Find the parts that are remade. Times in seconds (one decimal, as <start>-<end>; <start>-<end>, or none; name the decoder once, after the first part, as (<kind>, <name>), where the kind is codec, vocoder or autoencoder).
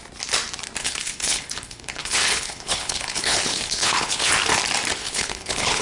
0.8-4.3 (codec, HILCodec); 5.0-5.8